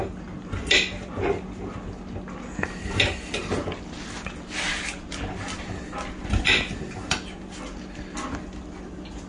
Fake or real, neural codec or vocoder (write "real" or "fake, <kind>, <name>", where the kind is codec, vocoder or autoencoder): real